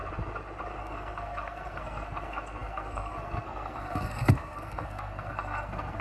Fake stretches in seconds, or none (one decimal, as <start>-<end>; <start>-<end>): 0.8-6.0